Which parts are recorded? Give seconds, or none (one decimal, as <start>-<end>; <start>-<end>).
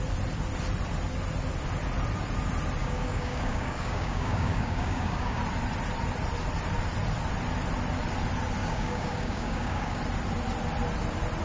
0.0-2.8; 5.4-8.6; 10.0-11.4